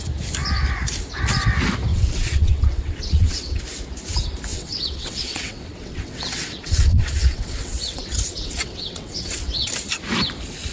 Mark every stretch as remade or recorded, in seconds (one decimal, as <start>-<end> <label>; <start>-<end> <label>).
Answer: 0.0-1.9 recorded; 1.9-3.6 remade; 3.6-4.5 recorded; 4.5-9.7 remade; 9.7-10.7 recorded